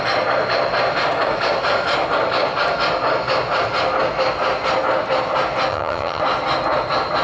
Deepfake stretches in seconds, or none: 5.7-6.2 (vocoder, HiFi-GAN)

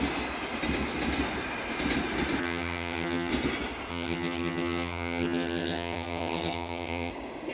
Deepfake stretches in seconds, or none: 2.4-3.3 (vocoder, HiFi-GAN); 3.9-7.1

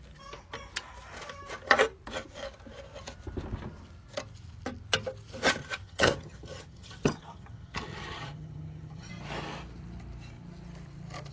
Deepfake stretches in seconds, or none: 5.6-9.1 (vocoder, HiFi-GAN)

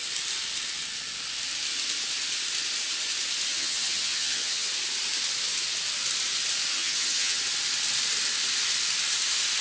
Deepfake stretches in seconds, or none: 3.5-4.7 (vocoder, HiFi-GAN); 6.7-7.4

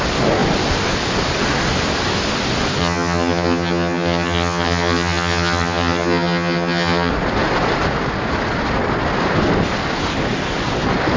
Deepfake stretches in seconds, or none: 2.8-7.1 (vocoder, HiFi-GAN)

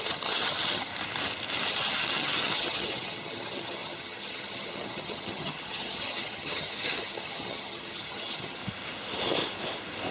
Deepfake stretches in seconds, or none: 0.0-0.9 (vocoder, HiFi-GAN); 1.7-8.6